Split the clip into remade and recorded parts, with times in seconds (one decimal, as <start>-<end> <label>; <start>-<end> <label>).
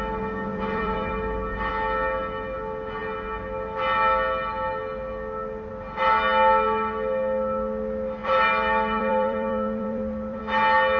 0.0-0.5 recorded; 0.5-1.7 remade; 1.7-8.2 recorded; 8.2-10.4 remade; 10.4-11.0 recorded